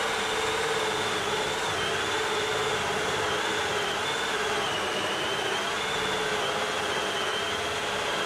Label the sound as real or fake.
real